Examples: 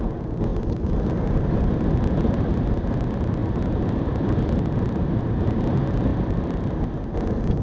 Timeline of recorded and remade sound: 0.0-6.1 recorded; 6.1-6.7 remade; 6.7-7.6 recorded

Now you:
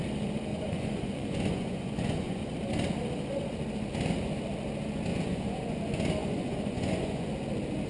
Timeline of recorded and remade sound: 0.0-0.5 recorded; 0.5-2.4 remade; 2.4-5.1 recorded; 5.1-5.8 remade; 5.8-6.2 recorded; 6.2-7.3 remade; 7.3-7.9 recorded

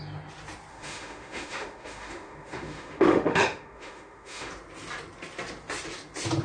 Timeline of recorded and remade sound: 0.0-0.7 recorded; 0.7-4.5 remade; 4.5-6.4 recorded

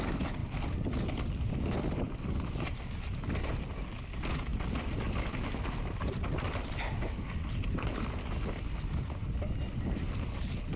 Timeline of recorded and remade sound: 0.0-10.8 recorded

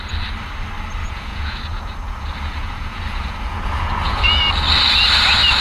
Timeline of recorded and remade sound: 0.0-1.0 recorded; 1.0-4.4 remade; 4.4-5.6 recorded